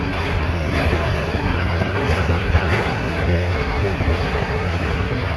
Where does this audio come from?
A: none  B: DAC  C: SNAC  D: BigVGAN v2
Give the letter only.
C